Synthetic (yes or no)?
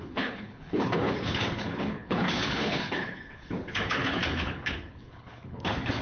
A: yes